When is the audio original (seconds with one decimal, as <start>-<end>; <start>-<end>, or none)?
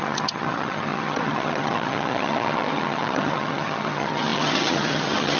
none